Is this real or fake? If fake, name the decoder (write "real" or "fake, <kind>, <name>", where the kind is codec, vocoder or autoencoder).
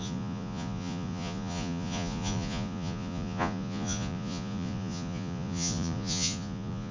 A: fake, vocoder, Vocos